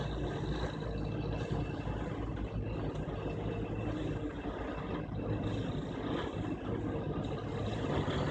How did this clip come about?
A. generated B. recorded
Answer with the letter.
B